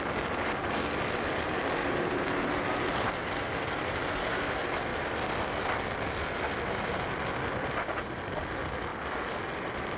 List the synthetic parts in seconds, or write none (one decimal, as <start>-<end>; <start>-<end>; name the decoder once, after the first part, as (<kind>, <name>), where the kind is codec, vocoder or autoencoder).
1.8-2.5 (vocoder, BigVGAN v2)